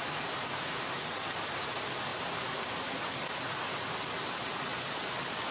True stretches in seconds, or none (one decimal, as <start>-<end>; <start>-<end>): 0.0-5.5